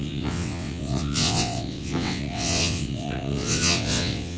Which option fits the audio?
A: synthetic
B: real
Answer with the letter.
A